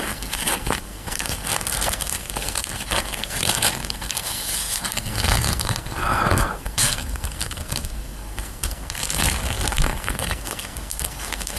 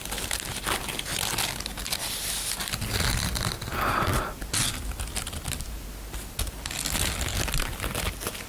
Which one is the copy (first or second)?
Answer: first